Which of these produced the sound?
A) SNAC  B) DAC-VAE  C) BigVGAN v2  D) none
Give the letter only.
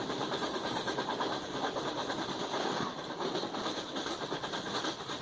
C